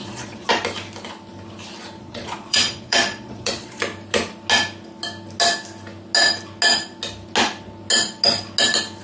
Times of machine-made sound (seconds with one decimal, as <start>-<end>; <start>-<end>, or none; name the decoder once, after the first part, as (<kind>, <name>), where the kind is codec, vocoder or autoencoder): 0.0-0.5 (vocoder, Vocos); 2.0-3.8